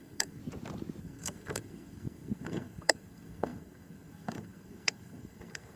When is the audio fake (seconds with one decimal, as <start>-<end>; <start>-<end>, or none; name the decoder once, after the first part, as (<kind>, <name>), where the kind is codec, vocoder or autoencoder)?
0.0-0.4 (codec, SNAC); 1.0-5.8